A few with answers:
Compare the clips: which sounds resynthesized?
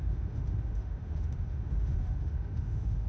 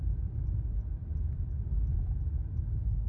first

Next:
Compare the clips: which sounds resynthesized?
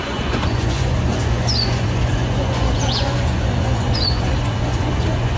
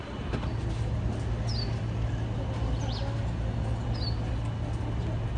first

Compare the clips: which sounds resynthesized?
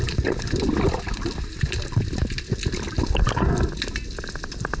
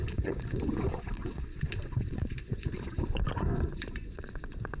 second